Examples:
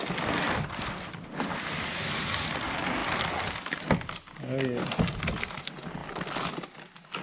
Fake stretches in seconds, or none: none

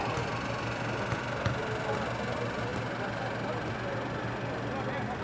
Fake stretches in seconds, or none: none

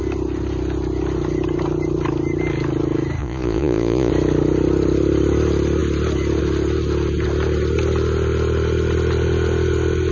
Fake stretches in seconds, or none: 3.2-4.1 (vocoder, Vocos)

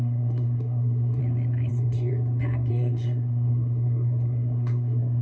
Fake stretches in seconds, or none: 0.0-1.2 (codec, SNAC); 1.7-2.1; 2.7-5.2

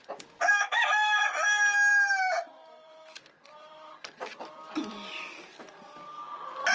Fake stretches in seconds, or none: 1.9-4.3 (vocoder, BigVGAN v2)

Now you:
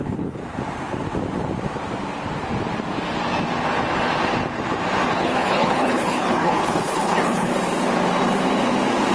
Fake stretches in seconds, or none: 0.0-0.4 (codec, HILCodec); 5.1-7.5